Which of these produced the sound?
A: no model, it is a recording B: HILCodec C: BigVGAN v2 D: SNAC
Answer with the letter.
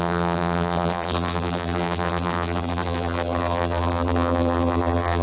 C